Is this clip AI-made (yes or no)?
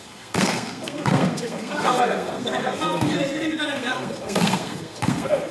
yes